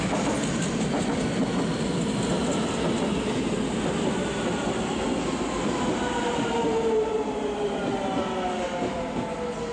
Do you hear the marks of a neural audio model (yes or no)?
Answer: no